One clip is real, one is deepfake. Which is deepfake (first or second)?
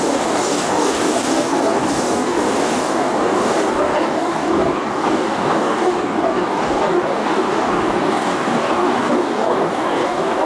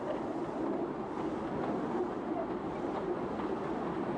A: first